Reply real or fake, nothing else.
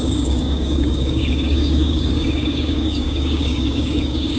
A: fake